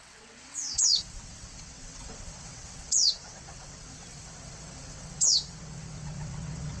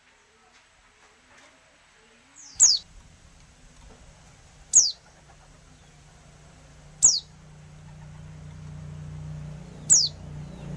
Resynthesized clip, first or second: first